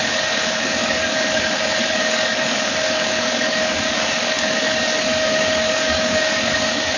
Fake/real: fake